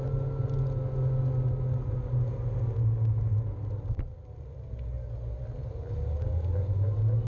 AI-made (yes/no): no